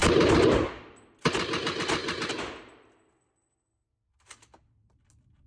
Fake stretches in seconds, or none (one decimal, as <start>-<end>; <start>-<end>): none